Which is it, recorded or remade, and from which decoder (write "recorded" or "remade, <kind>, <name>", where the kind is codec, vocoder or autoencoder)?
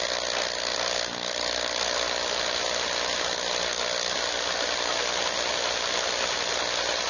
recorded